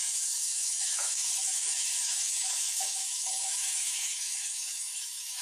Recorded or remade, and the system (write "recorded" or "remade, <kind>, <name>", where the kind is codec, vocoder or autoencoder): remade, autoencoder, DAC-VAE